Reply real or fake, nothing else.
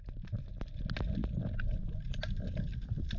real